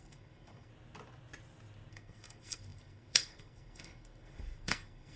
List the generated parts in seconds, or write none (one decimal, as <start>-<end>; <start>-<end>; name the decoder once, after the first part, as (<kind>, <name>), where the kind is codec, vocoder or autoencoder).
0.0-0.7 (codec, SNAC); 1.9-5.2